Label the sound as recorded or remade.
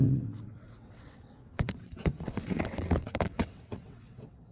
remade